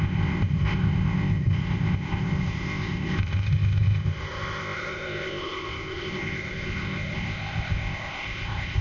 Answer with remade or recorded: remade